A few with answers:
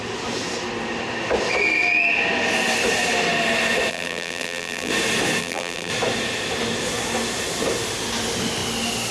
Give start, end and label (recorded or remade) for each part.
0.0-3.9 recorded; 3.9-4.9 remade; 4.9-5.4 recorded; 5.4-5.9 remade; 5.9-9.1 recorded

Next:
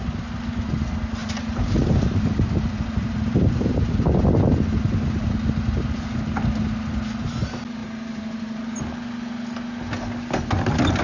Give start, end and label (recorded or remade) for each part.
0.0-1.2 recorded; 1.2-3.7 remade; 3.7-7.8 recorded; 7.8-8.7 remade; 8.7-11.0 recorded

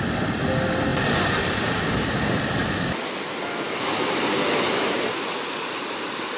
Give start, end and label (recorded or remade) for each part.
0.0-6.4 recorded

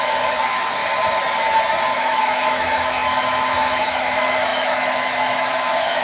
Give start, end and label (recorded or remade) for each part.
0.0-0.8 remade; 0.8-1.9 recorded; 1.9-6.0 remade

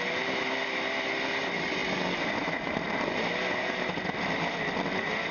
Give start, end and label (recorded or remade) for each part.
0.0-5.3 recorded

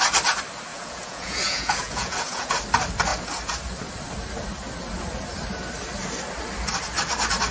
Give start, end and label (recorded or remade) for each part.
0.0-0.7 recorded; 0.7-2.5 remade; 2.5-7.5 recorded

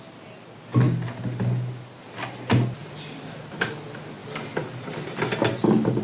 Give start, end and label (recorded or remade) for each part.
0.0-2.8 recorded; 2.8-3.7 remade; 3.7-6.0 recorded

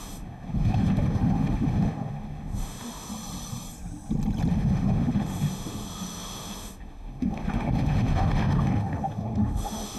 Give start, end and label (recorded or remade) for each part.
0.0-3.1 remade; 3.1-4.5 recorded; 4.5-10.0 remade